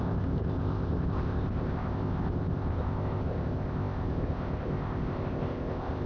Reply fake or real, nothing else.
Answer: fake